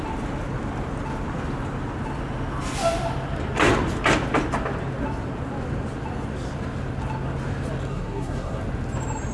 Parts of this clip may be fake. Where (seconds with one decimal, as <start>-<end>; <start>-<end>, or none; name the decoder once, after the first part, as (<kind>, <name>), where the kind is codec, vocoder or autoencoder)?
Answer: 7.9-8.6 (codec, SNAC)